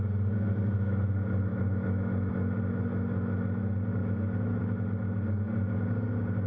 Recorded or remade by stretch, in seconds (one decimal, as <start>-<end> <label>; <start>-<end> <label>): 0.0-1.5 recorded; 1.5-2.3 remade; 2.3-4.0 recorded; 4.0-4.6 remade; 4.6-6.5 recorded